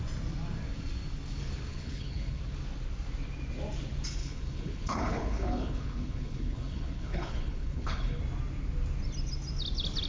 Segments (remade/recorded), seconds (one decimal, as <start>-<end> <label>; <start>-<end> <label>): 0.0-1.7 recorded; 1.7-2.4 remade; 2.4-4.2 recorded; 4.2-8.2 remade; 8.2-10.1 recorded